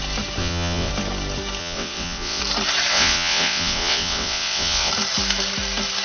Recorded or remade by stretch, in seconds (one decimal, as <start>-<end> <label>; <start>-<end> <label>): 0.0-0.4 recorded; 0.4-0.9 remade; 0.9-1.6 recorded; 1.6-2.4 remade; 2.4-2.9 recorded; 2.9-4.9 remade; 4.9-6.0 recorded